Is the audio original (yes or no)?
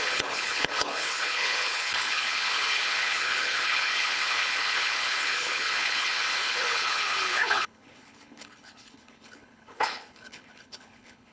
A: no